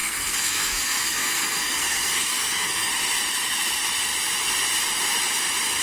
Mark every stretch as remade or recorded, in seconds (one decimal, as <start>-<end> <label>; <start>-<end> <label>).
0.0-2.9 remade; 2.9-5.8 recorded